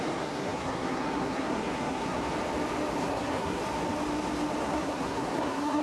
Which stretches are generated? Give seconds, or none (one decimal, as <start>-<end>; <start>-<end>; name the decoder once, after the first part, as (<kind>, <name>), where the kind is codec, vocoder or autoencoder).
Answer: 0.0-2.2 (codec, SNAC); 3.0-3.6; 4.6-5.8